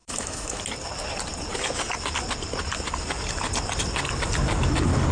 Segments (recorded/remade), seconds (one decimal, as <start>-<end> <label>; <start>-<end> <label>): 0.0-0.6 remade; 0.6-5.1 recorded